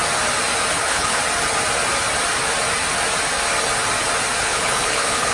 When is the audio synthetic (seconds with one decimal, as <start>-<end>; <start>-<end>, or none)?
0.7-1.2; 4.4-5.3